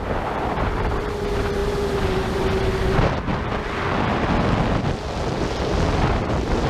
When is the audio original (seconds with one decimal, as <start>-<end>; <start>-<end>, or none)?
3.3-5.9